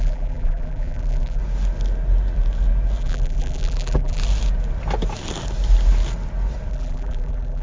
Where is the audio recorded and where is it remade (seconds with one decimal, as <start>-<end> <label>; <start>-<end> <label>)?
0.0-1.4 remade; 1.4-3.0 recorded; 3.0-4.2 remade; 4.2-6.7 recorded; 6.7-7.6 remade